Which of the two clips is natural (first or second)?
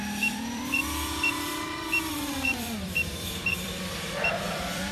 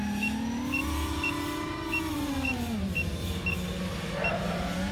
second